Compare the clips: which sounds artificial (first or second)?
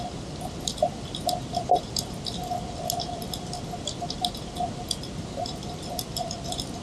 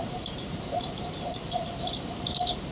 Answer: second